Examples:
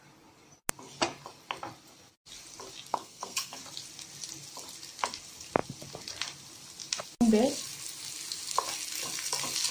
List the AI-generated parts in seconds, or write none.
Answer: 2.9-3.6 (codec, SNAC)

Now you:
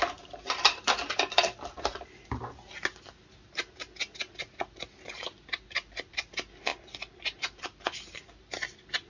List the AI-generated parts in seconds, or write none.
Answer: 0.0-6.7 (vocoder, BigVGAN v2); 7.4-9.1

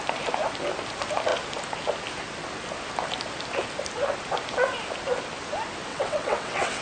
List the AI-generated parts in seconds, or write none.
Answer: 5.9-6.8 (vocoder, WaveNeXt)

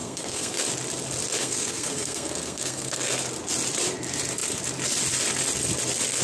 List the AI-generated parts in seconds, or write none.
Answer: 0.0-0.6 (codec, SNAC); 1.4-3.1

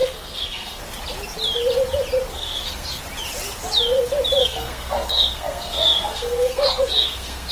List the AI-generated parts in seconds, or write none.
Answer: 0.0-0.8 (codec, SNAC); 2.3-3.0; 4.4-7.5

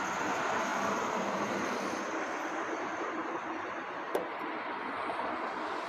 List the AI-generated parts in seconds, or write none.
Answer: 0.7-4.2 (vocoder, BigVGAN v2)

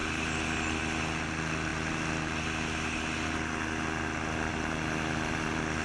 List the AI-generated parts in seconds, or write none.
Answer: none